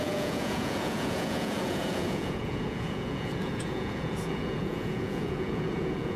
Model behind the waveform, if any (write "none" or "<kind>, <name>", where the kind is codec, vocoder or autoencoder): vocoder, Vocos